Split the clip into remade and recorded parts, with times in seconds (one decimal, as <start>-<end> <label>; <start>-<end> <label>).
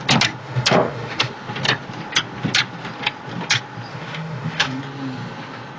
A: 0.0-0.4 recorded; 0.4-1.3 remade; 1.3-3.9 recorded; 3.9-4.8 remade; 4.8-5.8 recorded